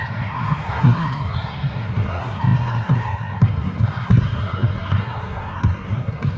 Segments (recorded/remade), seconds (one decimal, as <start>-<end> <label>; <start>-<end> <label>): 0.0-6.4 remade